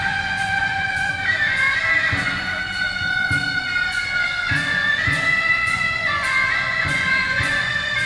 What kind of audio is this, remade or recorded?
remade